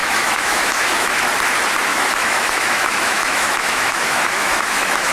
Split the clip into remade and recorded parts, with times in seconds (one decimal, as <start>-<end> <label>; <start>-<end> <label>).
0.0-1.2 remade; 1.2-1.9 recorded; 1.9-5.1 remade